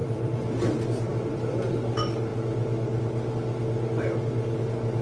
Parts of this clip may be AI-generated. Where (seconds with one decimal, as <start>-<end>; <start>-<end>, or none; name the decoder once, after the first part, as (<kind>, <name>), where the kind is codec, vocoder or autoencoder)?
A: 0.0-1.7 (vocoder, BigVGAN v2)